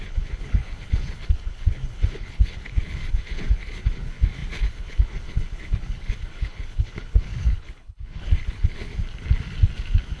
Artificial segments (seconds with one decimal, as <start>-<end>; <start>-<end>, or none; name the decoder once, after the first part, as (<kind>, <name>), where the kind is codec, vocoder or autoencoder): 0.0-8.9 (codec, HILCodec)